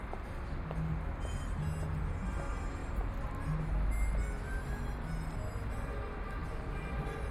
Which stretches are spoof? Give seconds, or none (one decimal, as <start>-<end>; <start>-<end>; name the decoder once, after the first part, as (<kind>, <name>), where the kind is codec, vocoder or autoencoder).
none